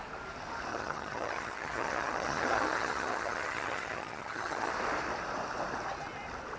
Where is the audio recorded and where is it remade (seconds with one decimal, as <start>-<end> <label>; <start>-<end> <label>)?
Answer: 0.0-0.7 recorded; 0.7-4.7 remade; 4.7-6.6 recorded